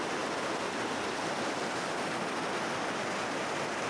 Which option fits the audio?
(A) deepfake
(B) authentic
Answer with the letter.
B